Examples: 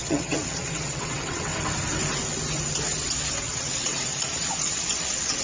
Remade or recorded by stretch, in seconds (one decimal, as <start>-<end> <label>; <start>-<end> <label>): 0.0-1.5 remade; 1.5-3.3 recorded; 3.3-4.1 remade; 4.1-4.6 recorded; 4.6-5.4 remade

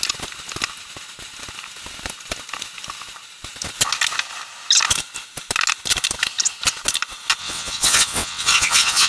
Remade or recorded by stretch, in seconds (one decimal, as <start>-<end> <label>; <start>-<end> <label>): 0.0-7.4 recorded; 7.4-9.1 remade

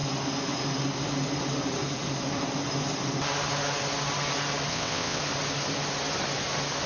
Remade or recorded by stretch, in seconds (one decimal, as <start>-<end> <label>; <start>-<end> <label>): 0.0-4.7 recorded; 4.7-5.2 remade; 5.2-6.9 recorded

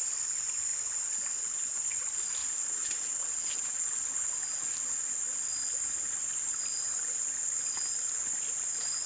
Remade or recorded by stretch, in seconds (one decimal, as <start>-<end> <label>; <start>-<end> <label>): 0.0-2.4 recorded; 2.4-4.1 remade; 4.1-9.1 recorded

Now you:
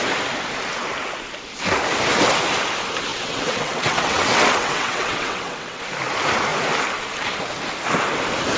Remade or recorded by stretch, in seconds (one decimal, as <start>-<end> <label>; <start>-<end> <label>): 0.0-3.1 recorded; 3.1-5.8 remade; 5.8-8.6 recorded

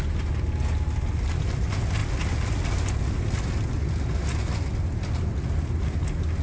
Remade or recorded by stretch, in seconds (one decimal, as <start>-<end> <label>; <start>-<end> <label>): 0.0-6.4 recorded

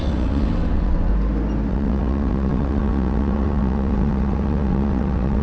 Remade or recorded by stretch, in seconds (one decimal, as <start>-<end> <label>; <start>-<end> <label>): 0.0-1.1 remade; 1.1-1.7 recorded; 1.7-5.4 remade

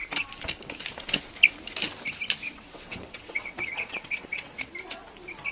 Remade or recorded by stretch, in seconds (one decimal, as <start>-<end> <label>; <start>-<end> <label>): 0.0-2.4 recorded; 2.4-4.7 remade; 4.7-5.5 recorded